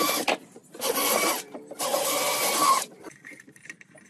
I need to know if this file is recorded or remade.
remade